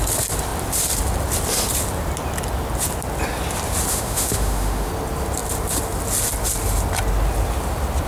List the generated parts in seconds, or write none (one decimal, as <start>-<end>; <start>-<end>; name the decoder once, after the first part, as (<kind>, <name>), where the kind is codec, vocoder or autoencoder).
3.9-4.9 (autoencoder, DAC-VAE)